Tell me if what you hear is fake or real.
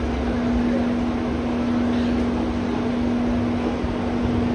real